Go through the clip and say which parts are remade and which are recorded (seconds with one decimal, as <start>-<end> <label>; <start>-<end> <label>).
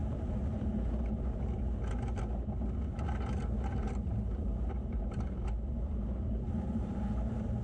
0.0-1.7 remade; 1.7-2.9 recorded; 2.9-7.6 remade